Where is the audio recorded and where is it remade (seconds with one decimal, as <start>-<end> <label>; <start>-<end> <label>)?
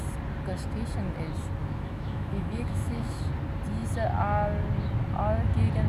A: 0.0-1.6 recorded; 1.6-3.2 remade; 3.2-5.9 recorded